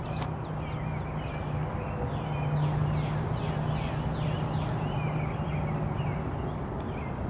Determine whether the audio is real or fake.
real